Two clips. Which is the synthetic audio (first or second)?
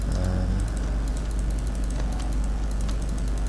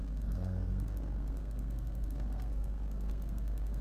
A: second